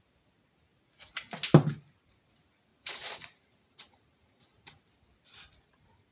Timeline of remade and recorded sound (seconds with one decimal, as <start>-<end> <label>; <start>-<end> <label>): 0.0-2.7 recorded; 2.7-4.8 remade; 4.8-6.1 recorded